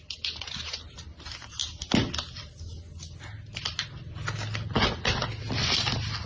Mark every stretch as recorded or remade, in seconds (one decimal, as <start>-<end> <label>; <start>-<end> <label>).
0.0-6.3 recorded